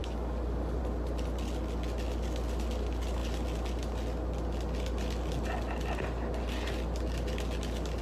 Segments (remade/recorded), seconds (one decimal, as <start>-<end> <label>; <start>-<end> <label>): 0.0-0.8 remade; 0.8-8.0 recorded